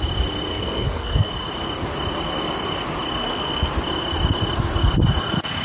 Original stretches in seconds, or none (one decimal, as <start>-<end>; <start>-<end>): 0.0-0.5; 1.3-3.2; 3.7-5.6

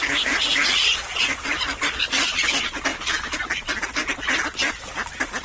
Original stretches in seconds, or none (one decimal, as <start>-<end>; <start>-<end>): 0.0-5.4

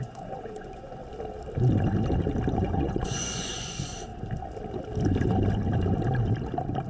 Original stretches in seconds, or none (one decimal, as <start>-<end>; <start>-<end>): 1.0-2.5; 4.1-6.9

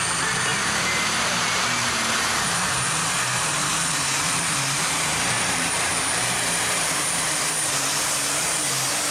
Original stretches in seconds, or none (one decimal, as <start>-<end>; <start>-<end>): 0.0-0.5; 2.7-3.6; 7.7-9.1

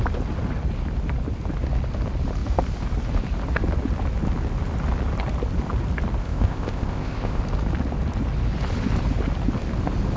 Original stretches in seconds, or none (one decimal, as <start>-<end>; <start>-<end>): 0.0-6.2; 7.4-10.2

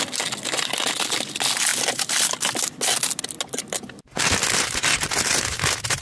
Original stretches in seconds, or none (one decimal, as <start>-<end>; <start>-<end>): 0.0-6.0